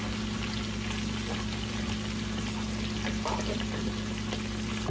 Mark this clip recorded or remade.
recorded